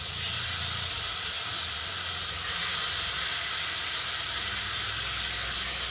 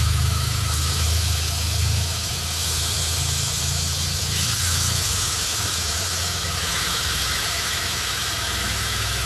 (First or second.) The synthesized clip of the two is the second